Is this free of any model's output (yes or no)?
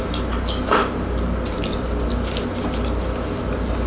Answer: yes